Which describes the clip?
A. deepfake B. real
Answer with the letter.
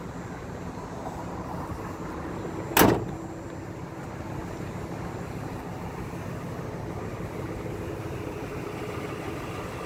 B